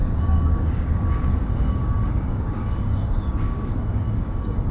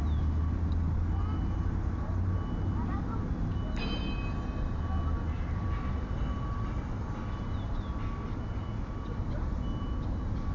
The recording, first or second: second